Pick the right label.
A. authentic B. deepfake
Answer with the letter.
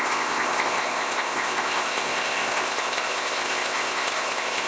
B